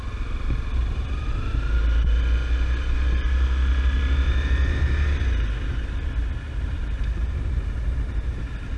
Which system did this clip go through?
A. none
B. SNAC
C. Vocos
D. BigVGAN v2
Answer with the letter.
A